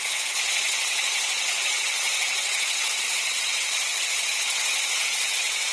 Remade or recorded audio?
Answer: remade